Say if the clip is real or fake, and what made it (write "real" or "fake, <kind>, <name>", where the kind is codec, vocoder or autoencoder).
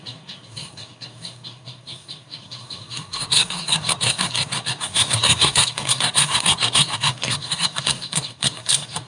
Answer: fake, codec, SNAC